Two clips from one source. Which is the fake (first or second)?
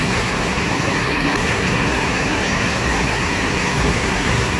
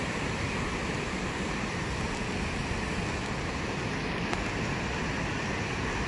first